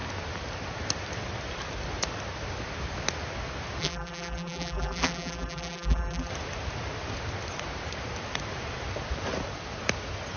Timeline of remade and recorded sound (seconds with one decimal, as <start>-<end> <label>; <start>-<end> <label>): 0.0-3.8 recorded; 3.8-6.3 remade; 6.3-10.4 recorded